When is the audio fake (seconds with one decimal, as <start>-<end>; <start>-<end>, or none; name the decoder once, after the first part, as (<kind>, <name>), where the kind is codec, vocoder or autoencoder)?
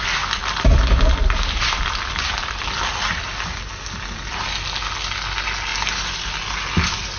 none